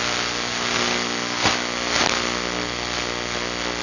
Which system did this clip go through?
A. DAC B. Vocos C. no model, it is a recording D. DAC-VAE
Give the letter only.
C